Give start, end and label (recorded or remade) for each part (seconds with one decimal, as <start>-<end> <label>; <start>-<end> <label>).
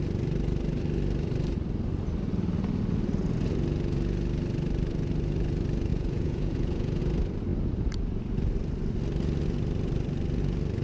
0.0-5.9 recorded; 5.9-7.0 remade; 7.0-10.8 recorded